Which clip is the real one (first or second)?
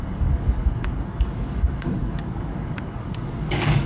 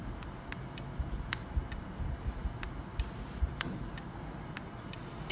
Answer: second